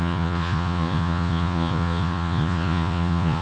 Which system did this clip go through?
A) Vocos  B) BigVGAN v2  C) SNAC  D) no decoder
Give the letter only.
A